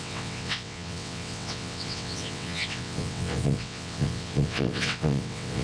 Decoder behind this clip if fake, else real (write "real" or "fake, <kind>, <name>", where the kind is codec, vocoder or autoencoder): fake, vocoder, WaveNeXt